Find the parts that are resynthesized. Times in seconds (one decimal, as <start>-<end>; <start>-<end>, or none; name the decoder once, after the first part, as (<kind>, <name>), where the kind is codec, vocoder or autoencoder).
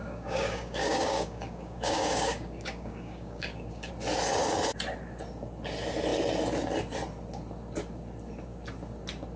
0.0-3.9 (codec, DAC)